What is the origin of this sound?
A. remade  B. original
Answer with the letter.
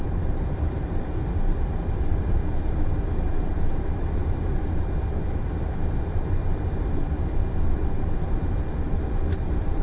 A